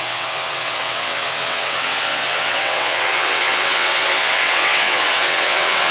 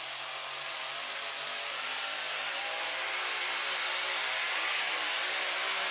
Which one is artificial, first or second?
first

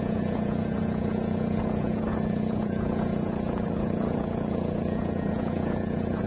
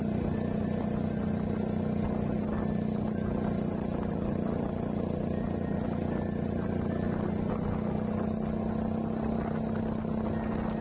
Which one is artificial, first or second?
first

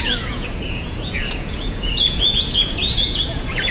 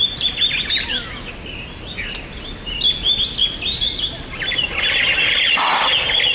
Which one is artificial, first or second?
first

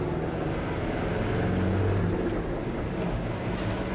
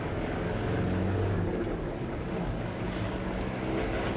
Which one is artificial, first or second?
second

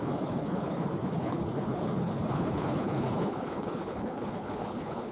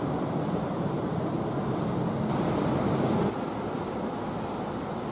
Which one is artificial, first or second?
first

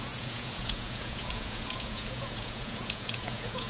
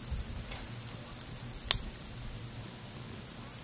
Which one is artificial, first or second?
first